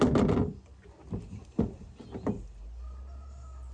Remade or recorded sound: recorded